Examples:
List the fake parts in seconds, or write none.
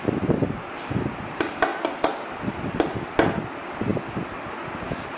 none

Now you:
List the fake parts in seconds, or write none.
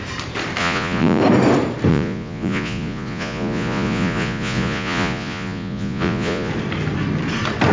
0.6-1.2; 1.9-6.5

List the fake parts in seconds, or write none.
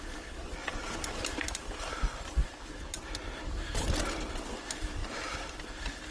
none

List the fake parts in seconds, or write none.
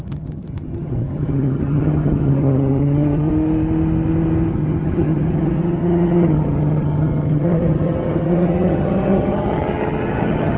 0.0-3.3; 4.5-10.6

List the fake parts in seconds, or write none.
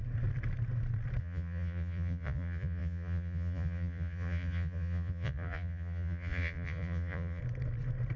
1.2-7.4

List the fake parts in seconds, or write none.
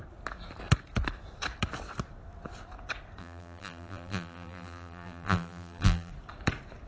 3.2-6.1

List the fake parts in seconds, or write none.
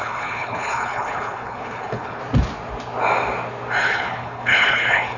0.0-2.2; 3.8-5.2